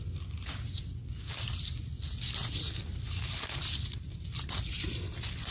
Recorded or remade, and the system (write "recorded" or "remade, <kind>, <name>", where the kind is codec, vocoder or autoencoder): recorded